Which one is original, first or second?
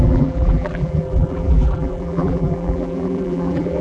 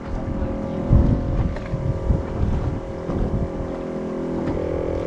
second